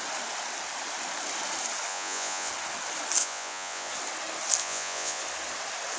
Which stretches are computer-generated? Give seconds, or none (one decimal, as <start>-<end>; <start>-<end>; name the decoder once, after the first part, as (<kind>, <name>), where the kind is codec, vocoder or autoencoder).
1.9-2.5 (vocoder, Vocos); 3.2-3.9; 4.6-5.2